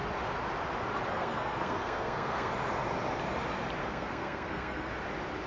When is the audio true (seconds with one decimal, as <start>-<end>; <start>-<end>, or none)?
0.0-1.1; 2.5-3.8; 4.9-5.5